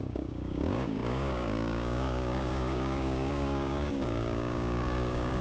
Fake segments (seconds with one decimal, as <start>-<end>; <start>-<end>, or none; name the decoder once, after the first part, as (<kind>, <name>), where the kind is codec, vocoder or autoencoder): 0.0-5.4 (codec, DAC)